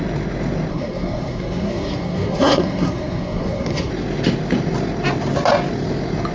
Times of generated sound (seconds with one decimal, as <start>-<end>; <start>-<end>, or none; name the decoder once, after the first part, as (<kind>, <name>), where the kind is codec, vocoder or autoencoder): 0.7-3.9 (codec, SNAC)